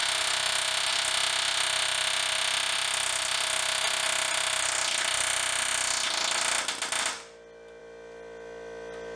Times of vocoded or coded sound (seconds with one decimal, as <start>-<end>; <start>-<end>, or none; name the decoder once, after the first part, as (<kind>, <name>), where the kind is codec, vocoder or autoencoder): none